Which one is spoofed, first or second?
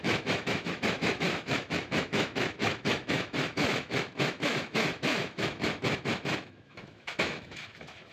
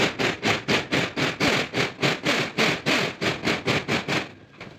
first